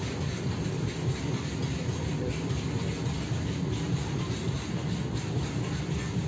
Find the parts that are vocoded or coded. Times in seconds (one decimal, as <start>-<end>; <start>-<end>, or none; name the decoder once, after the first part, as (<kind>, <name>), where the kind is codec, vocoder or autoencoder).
none

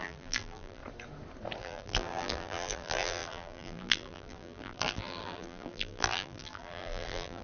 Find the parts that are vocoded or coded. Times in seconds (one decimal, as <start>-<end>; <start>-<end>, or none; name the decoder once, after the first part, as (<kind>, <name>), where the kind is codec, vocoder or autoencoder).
0.0-0.8 (vocoder, BigVGAN v2); 1.6-7.4

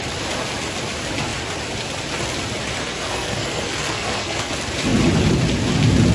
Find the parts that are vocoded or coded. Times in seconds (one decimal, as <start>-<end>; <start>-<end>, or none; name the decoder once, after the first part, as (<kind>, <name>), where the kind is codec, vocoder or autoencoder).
2.8-4.5 (codec, SNAC)

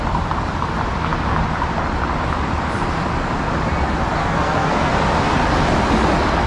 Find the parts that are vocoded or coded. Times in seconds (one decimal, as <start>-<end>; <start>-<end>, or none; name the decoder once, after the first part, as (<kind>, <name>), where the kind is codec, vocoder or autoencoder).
4.2-4.9 (codec, SNAC)

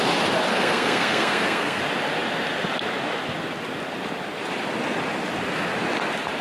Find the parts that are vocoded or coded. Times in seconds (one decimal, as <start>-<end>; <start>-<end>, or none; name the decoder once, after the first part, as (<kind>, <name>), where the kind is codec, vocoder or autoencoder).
0.5-1.8 (codec, SNAC)

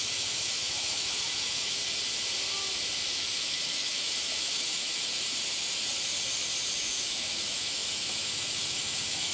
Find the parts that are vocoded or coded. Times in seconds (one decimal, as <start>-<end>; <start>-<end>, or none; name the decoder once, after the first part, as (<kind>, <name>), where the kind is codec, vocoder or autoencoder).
0.0-1.8 (autoencoder, DAC-VAE); 3.0-4.9; 6.8-9.3

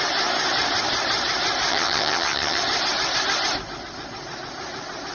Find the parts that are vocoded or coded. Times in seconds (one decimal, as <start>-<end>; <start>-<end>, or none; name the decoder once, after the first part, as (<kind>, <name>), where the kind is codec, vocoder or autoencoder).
1.7-2.6 (vocoder, HiFi-GAN)